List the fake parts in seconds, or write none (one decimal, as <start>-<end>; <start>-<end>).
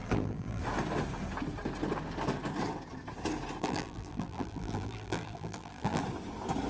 0.0-0.6; 3.6-6.0